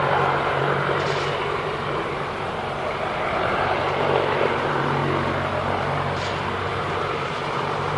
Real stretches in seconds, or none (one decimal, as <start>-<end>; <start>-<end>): 5.0-6.7